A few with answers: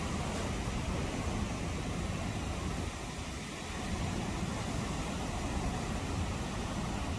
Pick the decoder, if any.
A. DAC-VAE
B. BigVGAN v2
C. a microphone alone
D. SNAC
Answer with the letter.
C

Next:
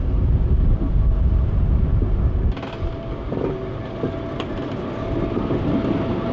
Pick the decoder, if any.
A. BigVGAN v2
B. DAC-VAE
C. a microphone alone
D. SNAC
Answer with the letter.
C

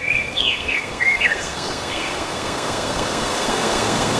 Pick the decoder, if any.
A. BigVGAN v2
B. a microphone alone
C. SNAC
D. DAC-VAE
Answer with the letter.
C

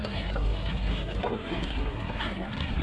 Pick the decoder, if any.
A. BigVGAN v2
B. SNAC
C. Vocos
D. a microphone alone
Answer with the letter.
B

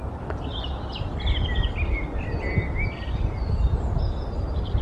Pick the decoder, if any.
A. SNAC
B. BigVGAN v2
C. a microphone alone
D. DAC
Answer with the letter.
C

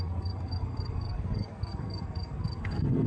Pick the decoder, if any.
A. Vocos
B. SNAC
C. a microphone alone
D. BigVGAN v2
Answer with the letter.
B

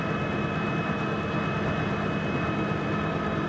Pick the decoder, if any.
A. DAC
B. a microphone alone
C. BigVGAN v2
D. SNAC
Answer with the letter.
B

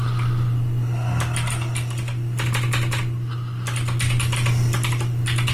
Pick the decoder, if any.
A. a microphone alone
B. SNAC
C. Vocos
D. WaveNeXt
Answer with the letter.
A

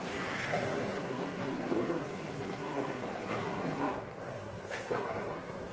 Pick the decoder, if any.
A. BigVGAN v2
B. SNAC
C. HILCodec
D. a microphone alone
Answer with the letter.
B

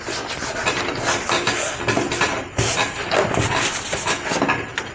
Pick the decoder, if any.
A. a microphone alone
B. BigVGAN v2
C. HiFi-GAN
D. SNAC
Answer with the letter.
A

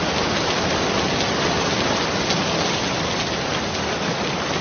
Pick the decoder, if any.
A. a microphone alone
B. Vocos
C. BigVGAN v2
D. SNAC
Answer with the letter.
A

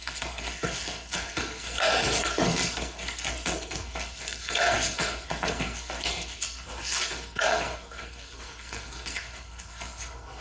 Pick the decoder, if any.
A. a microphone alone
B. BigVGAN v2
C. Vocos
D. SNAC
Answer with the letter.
D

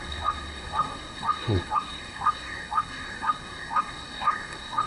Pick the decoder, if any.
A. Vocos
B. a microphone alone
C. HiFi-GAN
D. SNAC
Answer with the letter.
D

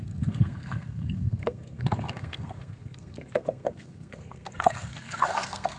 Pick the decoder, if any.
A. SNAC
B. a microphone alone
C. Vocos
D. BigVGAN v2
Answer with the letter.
A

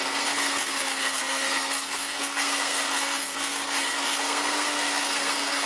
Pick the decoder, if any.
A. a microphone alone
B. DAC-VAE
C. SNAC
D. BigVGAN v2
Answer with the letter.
C